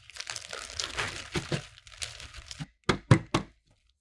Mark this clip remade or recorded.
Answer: recorded